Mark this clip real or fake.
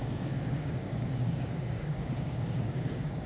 fake